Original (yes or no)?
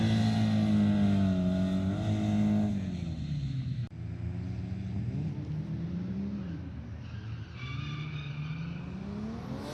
yes